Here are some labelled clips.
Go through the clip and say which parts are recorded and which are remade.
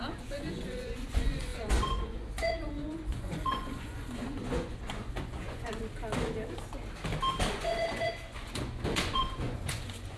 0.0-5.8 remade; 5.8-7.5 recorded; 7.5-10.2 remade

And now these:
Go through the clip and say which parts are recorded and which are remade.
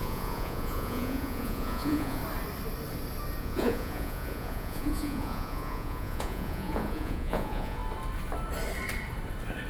0.0-2.2 remade; 2.2-3.4 recorded; 3.4-7.8 remade; 7.8-9.7 recorded